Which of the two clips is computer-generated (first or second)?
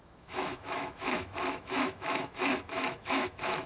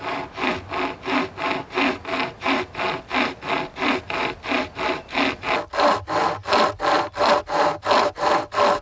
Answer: first